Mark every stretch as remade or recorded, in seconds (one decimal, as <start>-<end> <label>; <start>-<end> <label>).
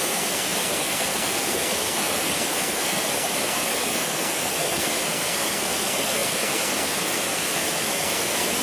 0.0-8.6 remade